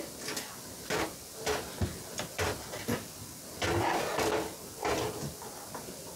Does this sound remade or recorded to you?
recorded